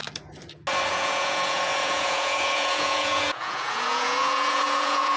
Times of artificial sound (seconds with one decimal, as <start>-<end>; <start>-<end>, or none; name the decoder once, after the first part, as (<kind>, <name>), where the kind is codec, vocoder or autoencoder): 0.9-5.2 (vocoder, Vocos)